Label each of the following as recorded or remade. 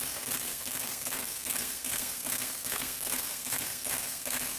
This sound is remade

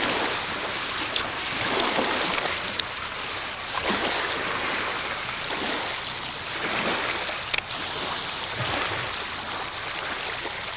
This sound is recorded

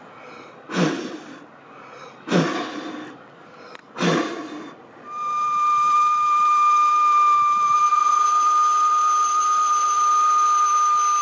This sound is recorded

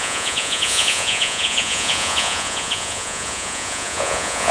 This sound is remade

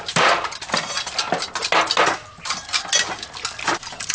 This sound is recorded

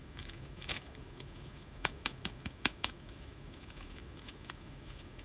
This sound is remade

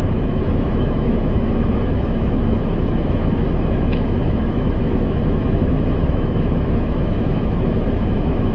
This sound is remade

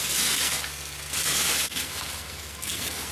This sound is remade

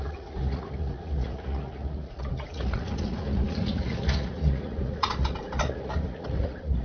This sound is remade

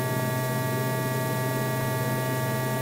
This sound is recorded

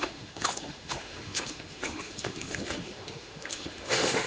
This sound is remade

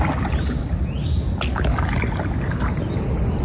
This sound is recorded